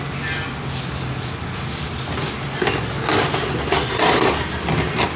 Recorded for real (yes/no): yes